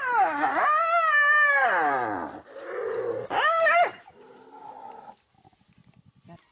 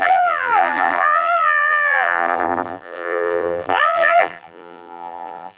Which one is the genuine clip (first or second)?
first